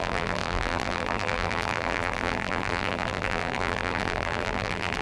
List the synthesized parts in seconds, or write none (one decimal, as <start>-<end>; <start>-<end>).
0.0-5.0

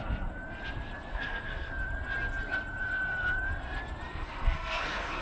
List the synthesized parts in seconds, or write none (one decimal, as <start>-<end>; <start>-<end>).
1.1-1.7; 4.1-5.2

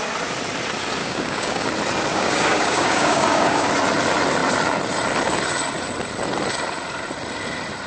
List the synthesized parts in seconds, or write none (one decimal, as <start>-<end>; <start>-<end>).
1.0-1.7; 2.1-3.7

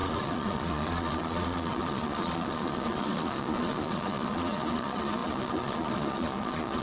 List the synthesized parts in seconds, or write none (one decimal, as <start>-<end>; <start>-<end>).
0.0-6.8

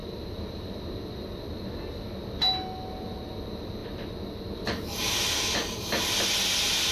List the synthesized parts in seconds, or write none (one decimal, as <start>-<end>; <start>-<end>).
0.0-0.8